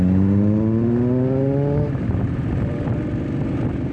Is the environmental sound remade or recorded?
recorded